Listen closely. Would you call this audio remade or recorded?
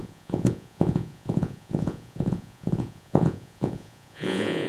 remade